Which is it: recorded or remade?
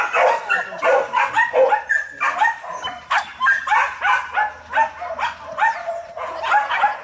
recorded